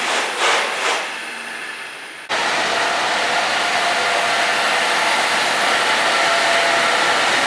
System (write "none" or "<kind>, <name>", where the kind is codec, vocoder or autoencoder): none